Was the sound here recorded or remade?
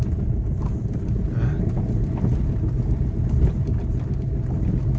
recorded